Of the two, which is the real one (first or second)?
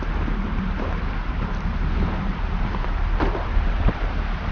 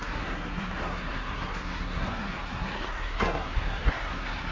first